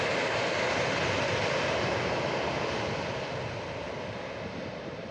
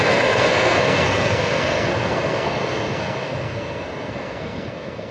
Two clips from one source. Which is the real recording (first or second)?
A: first